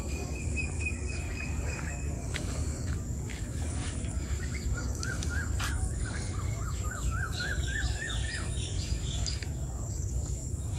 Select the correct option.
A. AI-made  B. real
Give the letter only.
A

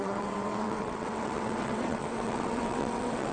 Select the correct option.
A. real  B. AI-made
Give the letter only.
B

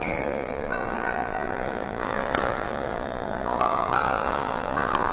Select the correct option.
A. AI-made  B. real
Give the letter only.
A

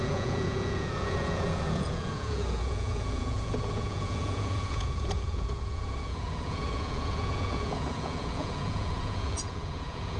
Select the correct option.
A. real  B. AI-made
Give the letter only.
B